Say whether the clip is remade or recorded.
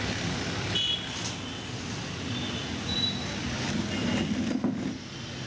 recorded